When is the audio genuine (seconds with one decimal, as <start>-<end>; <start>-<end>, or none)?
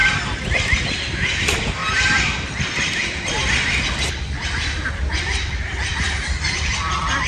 0.0-1.4; 1.8-2.5; 3.4-4.8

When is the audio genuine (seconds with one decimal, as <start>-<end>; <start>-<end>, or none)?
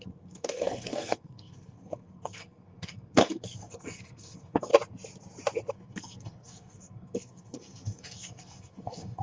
4.7-5.7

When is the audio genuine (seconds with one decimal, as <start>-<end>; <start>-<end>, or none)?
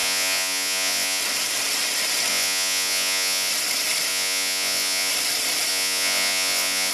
1.2-2.3; 3.5-4.1; 5.1-5.7